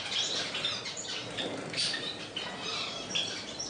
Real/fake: fake